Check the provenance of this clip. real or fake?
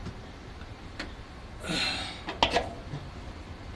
real